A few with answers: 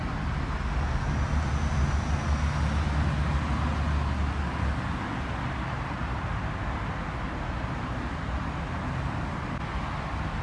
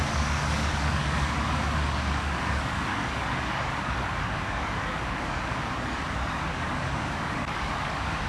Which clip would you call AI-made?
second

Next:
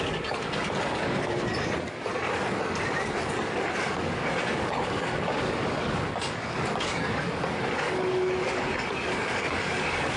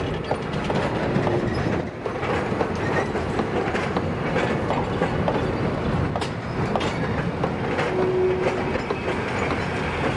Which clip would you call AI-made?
first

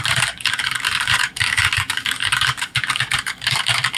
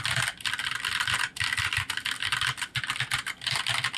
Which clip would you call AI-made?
first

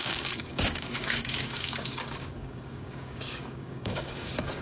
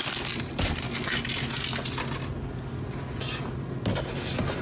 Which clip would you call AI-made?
first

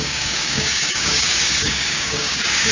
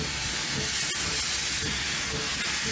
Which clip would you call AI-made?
first